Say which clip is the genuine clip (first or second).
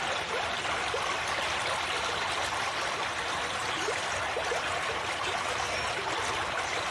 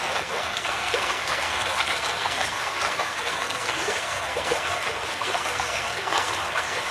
first